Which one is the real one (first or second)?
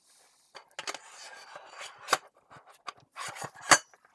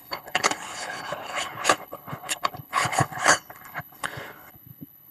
first